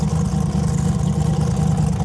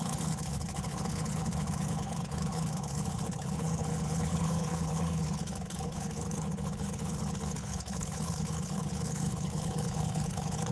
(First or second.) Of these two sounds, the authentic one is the first